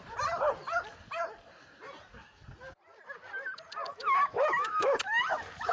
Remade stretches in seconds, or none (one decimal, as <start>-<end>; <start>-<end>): 3.9-5.0